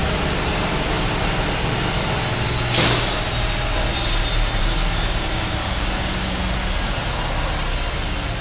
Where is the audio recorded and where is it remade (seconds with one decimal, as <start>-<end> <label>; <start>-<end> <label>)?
0.0-4.6 recorded; 4.6-6.4 remade; 6.4-8.4 recorded